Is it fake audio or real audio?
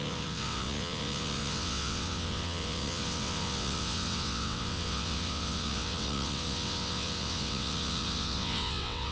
fake